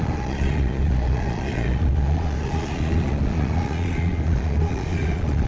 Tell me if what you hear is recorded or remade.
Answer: remade